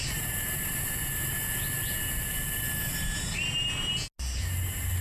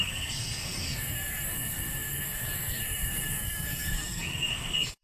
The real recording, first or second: first